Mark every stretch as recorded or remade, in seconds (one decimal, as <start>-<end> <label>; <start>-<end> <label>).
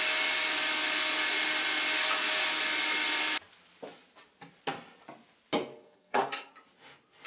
0.0-5.7 recorded; 5.7-6.5 remade; 6.5-7.3 recorded